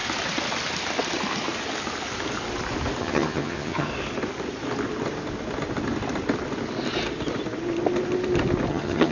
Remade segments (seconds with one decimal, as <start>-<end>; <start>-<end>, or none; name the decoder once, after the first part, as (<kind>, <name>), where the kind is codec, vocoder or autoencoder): 3.0-3.9 (vocoder, HiFi-GAN); 8.7-9.1